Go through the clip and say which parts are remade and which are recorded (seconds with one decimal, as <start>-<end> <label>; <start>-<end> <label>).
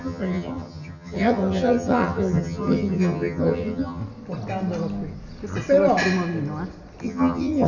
0.0-4.0 remade; 4.0-7.0 recorded; 7.0-7.7 remade